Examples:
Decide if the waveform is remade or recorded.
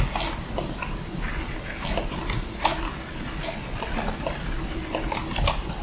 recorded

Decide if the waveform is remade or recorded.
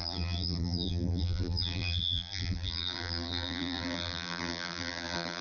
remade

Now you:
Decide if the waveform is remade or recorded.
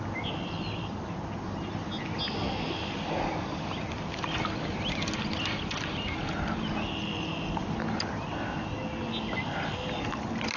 recorded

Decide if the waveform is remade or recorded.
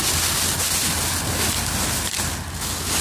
recorded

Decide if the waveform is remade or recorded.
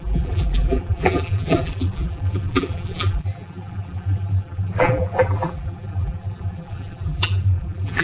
remade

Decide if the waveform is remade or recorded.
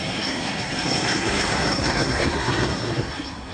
remade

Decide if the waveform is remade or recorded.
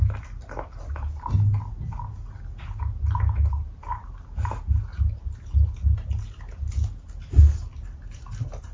recorded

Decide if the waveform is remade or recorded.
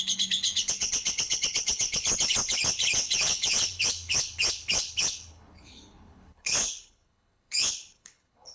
remade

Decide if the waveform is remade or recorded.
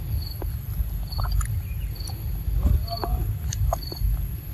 recorded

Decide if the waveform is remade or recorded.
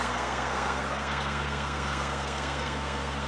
remade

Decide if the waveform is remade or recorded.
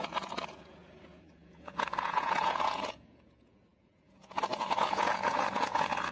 remade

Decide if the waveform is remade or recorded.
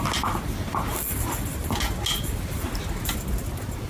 recorded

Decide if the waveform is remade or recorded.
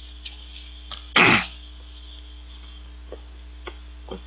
recorded